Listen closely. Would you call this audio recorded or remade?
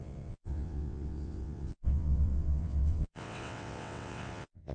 remade